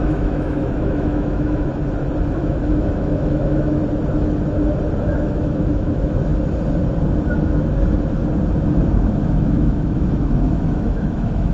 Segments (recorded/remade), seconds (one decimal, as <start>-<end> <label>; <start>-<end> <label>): 0.0-1.7 remade; 1.7-2.3 recorded; 2.3-3.8 remade; 3.8-5.0 recorded; 5.0-6.3 remade; 6.3-9.2 recorded; 9.2-11.5 remade